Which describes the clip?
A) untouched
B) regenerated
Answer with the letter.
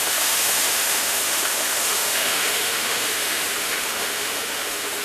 B